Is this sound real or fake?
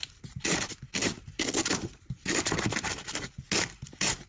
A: real